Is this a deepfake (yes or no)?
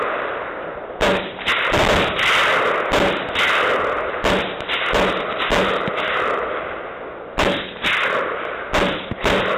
no